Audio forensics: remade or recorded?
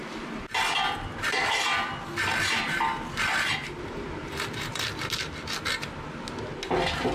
recorded